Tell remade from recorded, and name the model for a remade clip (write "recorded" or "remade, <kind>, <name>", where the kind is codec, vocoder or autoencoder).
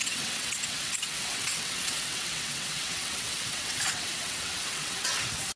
remade, vocoder, WaveNeXt